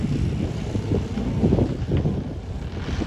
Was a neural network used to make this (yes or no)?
no